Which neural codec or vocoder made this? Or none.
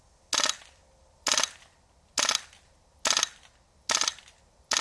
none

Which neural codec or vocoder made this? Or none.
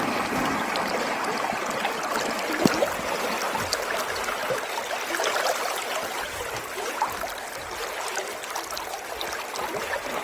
none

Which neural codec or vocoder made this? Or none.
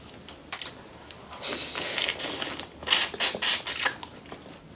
none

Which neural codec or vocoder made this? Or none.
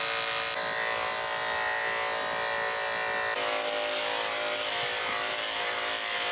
none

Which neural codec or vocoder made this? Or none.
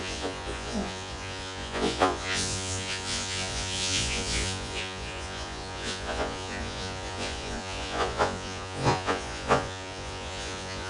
vocoder, Vocos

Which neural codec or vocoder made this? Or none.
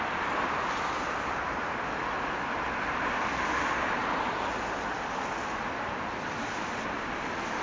none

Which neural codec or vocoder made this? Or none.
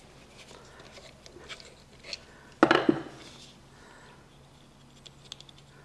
none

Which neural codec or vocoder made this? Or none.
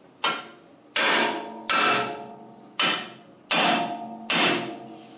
none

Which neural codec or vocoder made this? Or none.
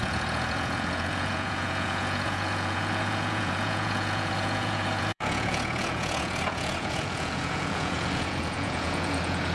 vocoder, Vocos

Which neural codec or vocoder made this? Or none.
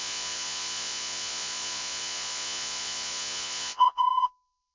vocoder, Vocos